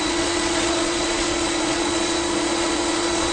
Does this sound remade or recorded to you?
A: remade